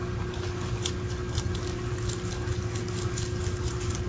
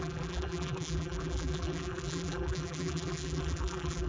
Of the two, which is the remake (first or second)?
second